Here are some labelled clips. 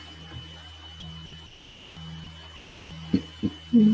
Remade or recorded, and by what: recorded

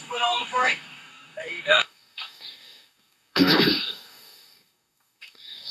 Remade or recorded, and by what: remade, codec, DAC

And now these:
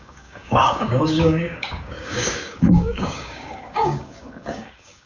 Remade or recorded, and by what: remade, codec, DAC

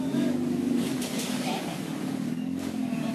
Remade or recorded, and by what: remade, codec, DAC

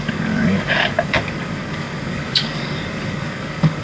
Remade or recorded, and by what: remade, codec, DAC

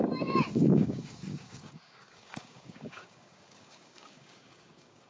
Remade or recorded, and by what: remade, codec, DAC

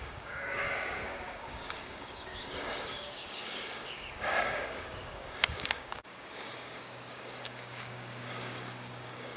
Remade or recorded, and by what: remade, codec, DAC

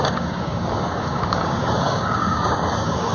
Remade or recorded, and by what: remade, codec, DAC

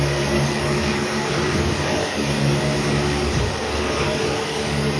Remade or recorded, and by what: remade, codec, DAC